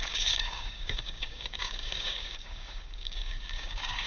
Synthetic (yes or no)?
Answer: yes